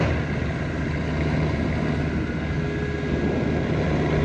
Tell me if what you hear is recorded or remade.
recorded